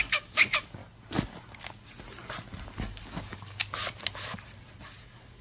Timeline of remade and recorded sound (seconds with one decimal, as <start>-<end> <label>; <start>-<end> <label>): 0.0-0.8 remade; 0.8-2.8 recorded; 2.8-3.6 remade; 3.6-5.0 recorded; 5.0-5.4 remade